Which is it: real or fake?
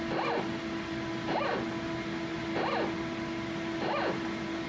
real